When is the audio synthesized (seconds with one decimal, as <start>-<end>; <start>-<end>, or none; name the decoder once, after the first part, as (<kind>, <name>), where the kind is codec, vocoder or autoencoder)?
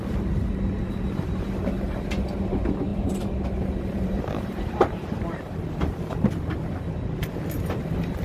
0.8-1.6 (vocoder, BigVGAN v2); 2.9-6.3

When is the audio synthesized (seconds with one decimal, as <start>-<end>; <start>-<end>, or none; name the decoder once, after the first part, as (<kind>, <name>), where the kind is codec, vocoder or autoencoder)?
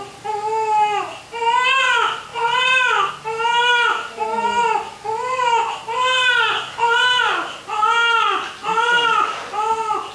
2.3-3.1 (vocoder, BigVGAN v2); 8.6-9.6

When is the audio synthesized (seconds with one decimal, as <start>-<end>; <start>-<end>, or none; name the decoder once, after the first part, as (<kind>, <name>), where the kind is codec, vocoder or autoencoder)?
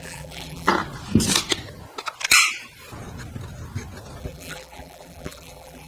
0.0-0.7 (vocoder, BigVGAN v2); 4.2-5.9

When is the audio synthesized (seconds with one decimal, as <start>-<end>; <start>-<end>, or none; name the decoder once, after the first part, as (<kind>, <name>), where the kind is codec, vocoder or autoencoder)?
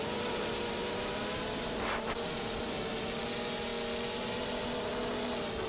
0.0-3.7 (vocoder, BigVGAN v2); 4.2-4.9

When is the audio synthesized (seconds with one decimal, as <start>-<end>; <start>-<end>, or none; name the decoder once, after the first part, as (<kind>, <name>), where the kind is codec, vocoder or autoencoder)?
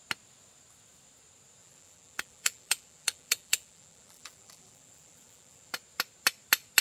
1.6-5.7 (vocoder, BigVGAN v2)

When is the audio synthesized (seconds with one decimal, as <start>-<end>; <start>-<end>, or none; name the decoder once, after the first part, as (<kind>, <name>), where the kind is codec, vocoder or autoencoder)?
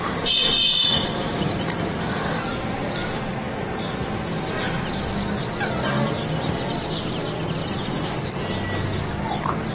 0.6-4.4 (vocoder, BigVGAN v2); 7.6-8.2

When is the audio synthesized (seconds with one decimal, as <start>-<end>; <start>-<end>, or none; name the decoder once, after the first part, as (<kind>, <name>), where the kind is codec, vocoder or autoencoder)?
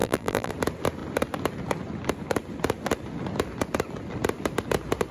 0.0-0.5 (vocoder, BigVGAN v2)